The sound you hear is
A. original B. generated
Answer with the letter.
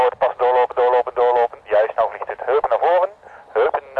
A